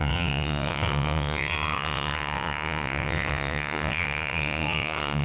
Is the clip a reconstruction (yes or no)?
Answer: yes